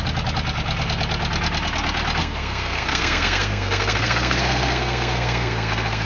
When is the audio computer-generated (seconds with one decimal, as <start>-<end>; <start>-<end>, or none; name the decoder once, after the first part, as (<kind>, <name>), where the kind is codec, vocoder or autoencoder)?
2.2-6.1 (codec, SNAC)